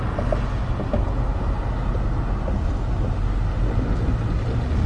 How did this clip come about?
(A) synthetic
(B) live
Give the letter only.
B